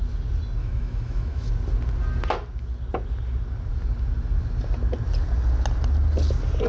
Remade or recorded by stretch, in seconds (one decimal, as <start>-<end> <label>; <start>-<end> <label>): 0.0-0.6 recorded; 0.6-1.5 remade; 1.5-6.7 recorded